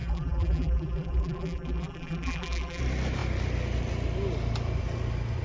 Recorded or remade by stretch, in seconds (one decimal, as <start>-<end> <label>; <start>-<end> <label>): 0.0-2.8 remade; 2.8-5.4 recorded